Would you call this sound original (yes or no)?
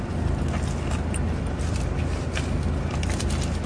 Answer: yes